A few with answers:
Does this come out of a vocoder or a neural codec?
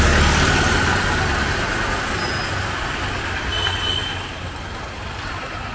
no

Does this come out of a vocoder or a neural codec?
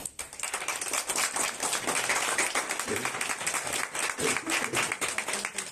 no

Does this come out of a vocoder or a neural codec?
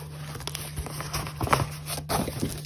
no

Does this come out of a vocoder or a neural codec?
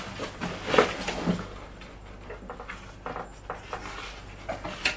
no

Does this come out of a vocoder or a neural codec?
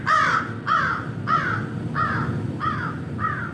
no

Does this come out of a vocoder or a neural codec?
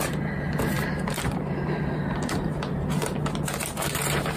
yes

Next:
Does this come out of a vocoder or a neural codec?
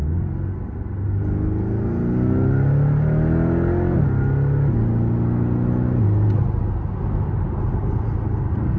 no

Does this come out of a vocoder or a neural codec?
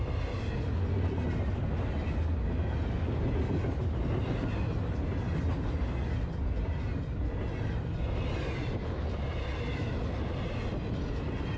no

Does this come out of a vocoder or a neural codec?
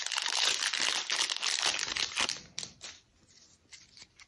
yes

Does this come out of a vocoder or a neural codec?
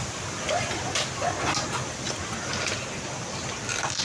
no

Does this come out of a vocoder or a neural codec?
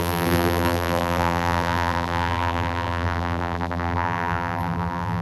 yes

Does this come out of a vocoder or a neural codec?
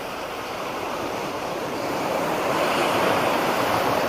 yes